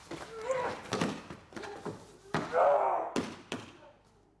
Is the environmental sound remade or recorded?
recorded